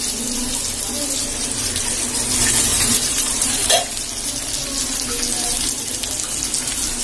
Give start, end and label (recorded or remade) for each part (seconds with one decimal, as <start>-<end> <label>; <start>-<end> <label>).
0.0-2.7 recorded; 2.7-3.7 remade; 3.7-7.0 recorded